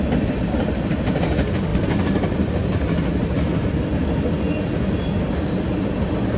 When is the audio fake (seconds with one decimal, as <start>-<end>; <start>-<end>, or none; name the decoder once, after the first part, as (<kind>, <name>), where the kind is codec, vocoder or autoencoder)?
none